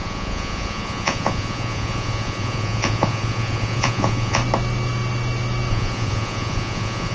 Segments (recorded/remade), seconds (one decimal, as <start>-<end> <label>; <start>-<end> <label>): 0.0-4.4 remade; 4.4-5.7 recorded; 5.7-7.1 remade